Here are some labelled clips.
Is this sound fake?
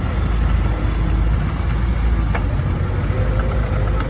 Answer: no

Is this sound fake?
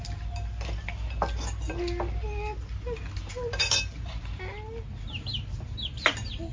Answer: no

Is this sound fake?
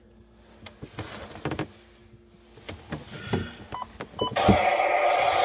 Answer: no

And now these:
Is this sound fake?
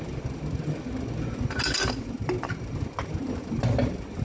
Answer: no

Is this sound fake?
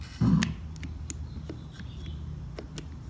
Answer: no